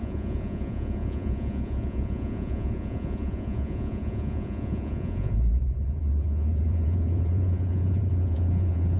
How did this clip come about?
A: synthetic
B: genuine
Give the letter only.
A